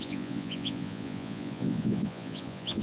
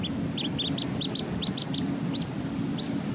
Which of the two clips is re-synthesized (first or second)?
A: first